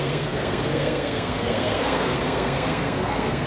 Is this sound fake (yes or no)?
yes